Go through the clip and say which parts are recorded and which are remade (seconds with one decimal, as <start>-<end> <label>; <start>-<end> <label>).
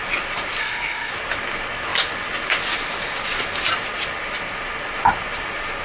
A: 0.0-0.6 recorded; 0.6-1.1 remade; 1.1-5.8 recorded